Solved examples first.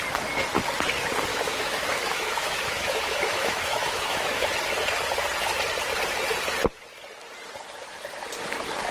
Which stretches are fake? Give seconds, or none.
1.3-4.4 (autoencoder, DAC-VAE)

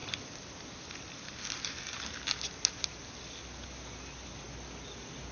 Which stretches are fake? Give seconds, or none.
none

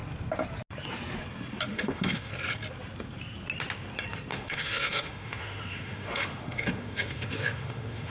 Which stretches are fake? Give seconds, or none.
1.7-2.3 (autoencoder, DAC-VAE); 4.3-8.1

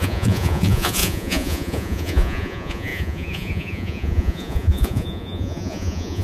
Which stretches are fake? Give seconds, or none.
0.0-6.2 (vocoder, Vocos)

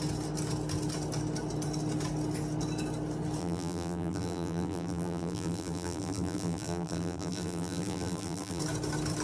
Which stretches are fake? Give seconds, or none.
3.4-8.6 (vocoder, BigVGAN v2)